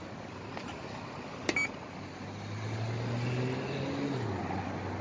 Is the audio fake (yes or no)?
no